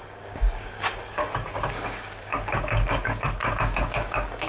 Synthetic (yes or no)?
yes